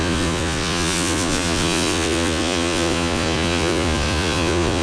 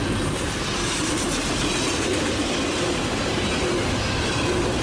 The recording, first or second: second